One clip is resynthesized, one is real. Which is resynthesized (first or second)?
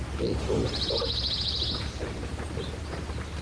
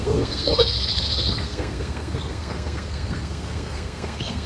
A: second